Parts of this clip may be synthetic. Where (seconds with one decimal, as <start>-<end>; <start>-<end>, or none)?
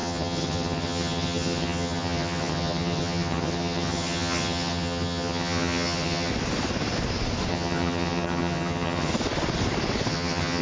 0.0-6.3; 7.5-9.1; 10.1-10.6